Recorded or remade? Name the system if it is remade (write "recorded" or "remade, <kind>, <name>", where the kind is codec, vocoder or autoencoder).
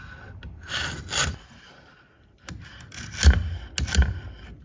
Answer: recorded